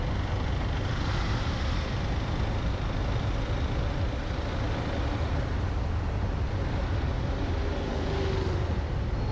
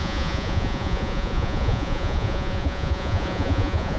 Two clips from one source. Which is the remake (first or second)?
second